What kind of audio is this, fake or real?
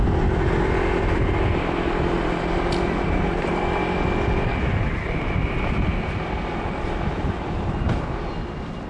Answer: real